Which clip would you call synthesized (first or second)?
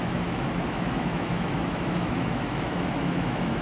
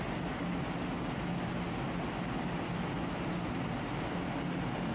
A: first